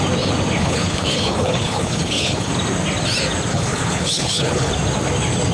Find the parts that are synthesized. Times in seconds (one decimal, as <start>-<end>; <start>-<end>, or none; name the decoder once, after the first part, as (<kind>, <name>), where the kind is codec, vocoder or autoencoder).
0.6-2.5 (codec, HILCodec); 3.5-4.7